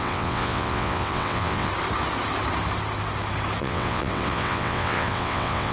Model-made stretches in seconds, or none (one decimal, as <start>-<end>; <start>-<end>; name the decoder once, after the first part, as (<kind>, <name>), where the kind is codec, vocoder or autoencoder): 0.0-1.7 (vocoder, WaveNeXt); 3.6-5.7